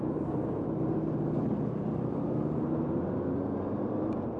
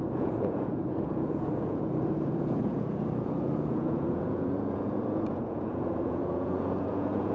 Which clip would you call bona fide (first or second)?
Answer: first